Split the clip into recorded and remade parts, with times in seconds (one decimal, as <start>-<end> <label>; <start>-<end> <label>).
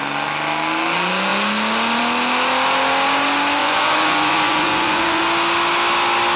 0.0-3.6 recorded; 3.6-5.2 remade; 5.2-6.4 recorded